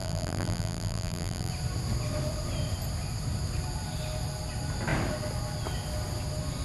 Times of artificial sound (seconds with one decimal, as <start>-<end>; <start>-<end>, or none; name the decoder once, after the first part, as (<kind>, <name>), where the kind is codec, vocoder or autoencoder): 0.0-1.5 (vocoder, BigVGAN v2)